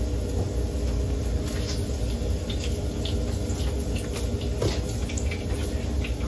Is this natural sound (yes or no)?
yes